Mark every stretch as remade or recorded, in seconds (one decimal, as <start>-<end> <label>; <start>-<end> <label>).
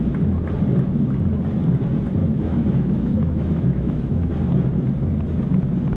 0.0-2.2 recorded; 2.2-4.3 remade; 4.3-6.0 recorded